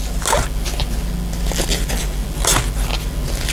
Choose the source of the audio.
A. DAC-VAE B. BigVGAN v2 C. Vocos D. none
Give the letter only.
D